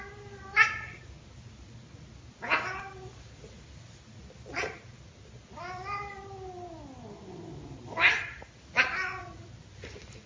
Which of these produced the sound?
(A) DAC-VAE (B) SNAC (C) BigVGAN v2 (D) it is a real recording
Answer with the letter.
D